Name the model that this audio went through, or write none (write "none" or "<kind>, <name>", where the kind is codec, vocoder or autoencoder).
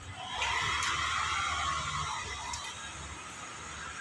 none